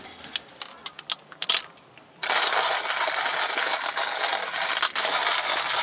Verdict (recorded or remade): recorded